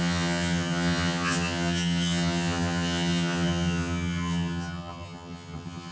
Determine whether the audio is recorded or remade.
remade